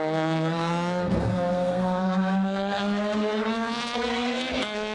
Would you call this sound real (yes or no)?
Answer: no